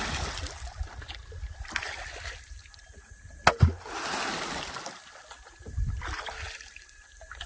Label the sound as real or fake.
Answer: real